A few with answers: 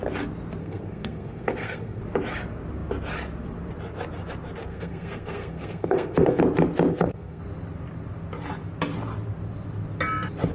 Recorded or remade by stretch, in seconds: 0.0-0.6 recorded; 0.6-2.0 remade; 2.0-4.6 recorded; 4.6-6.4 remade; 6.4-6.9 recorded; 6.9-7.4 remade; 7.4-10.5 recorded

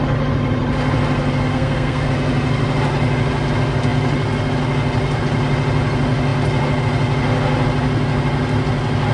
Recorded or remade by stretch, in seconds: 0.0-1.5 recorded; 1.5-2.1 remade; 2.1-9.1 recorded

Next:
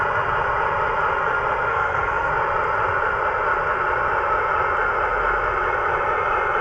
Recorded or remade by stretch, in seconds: 0.0-1.7 recorded; 1.7-2.3 remade; 2.3-6.6 recorded

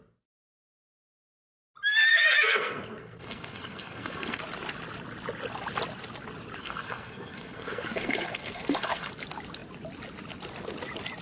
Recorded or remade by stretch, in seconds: 0.0-2.1 recorded; 2.1-4.4 remade; 4.4-6.6 recorded; 6.6-9.1 remade; 9.1-11.2 recorded

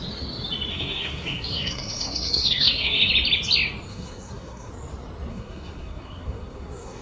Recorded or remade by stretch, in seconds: 0.0-0.7 recorded; 0.7-3.1 remade; 3.1-3.9 recorded; 3.9-4.7 remade; 4.7-5.3 recorded; 5.3-7.0 remade

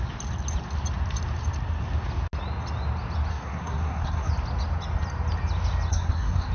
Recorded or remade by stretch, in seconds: 0.0-3.3 recorded; 3.3-4.3 remade; 4.3-5.9 recorded; 5.9-6.5 remade

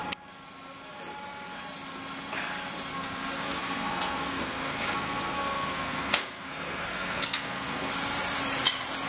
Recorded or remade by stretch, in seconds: 0.0-2.9 recorded; 2.9-7.9 remade; 7.9-9.1 recorded